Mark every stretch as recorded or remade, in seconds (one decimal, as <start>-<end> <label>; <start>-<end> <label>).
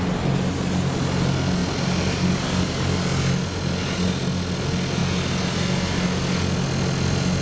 0.0-7.4 recorded